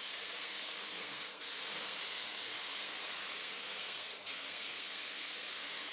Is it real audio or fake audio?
fake